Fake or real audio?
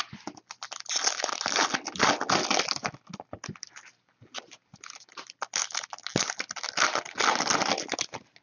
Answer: real